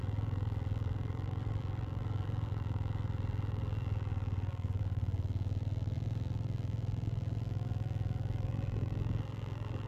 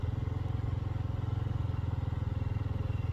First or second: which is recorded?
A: second